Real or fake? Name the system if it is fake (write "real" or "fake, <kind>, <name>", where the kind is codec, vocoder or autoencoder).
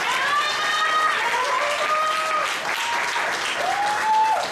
real